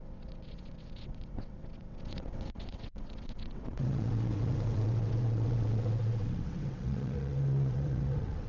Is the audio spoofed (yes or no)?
yes